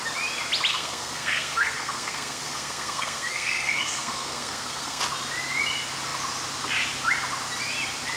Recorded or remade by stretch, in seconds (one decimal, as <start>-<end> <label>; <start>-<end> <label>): 0.0-0.7 recorded; 0.7-5.0 remade; 5.0-8.2 recorded